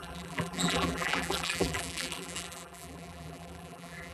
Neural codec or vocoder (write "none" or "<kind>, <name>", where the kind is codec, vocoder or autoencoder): vocoder, BigVGAN v2